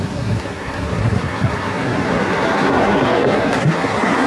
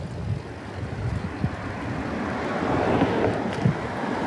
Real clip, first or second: second